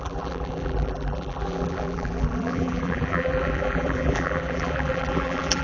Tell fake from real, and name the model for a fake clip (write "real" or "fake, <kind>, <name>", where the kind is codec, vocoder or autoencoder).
fake, vocoder, BigVGAN v2